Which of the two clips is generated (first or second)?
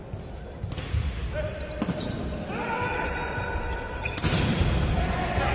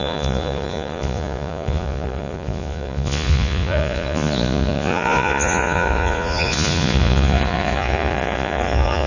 second